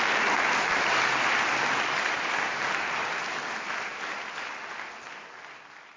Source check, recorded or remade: recorded